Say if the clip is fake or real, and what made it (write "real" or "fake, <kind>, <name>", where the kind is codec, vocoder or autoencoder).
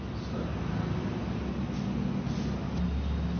real